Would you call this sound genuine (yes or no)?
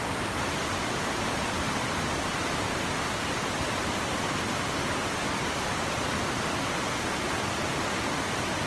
yes